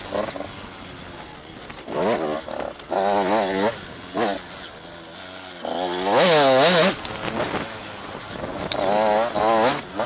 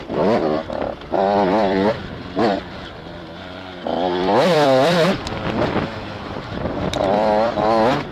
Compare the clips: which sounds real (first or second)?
first